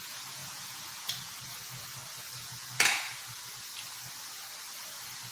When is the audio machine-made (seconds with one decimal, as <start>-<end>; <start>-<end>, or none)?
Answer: 0.0-1.9; 2.5-3.7